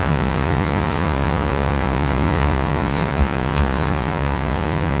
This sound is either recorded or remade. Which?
remade